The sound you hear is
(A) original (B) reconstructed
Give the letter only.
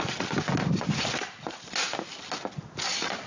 A